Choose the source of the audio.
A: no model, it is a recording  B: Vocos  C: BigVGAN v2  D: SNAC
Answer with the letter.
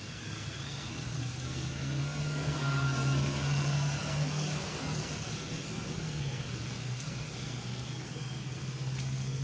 D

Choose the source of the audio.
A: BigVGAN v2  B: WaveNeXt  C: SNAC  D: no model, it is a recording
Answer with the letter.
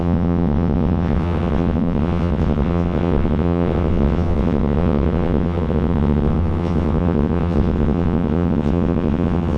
B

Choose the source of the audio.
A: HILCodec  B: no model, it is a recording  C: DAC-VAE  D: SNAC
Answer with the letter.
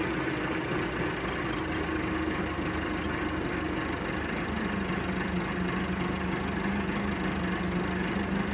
B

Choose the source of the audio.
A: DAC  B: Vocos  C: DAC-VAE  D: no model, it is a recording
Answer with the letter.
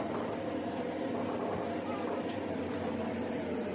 D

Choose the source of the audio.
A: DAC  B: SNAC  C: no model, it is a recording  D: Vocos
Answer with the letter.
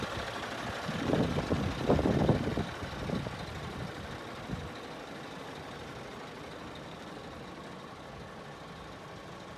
C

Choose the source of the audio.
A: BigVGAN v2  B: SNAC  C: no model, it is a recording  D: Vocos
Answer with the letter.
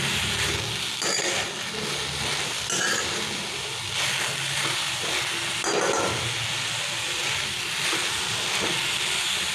C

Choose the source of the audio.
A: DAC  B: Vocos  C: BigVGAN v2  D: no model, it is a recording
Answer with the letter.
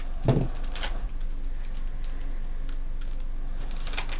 D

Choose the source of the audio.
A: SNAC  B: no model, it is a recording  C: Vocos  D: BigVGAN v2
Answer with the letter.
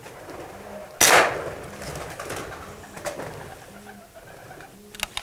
B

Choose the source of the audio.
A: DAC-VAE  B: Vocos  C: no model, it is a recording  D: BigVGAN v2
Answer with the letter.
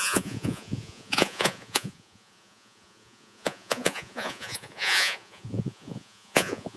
B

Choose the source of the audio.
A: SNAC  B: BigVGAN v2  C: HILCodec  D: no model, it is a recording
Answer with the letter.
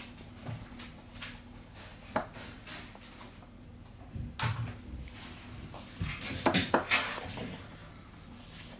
D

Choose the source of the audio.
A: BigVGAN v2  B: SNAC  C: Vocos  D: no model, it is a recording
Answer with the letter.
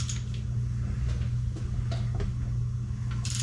D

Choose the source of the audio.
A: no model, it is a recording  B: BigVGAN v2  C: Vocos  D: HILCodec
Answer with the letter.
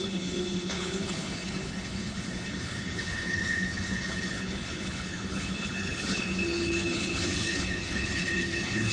D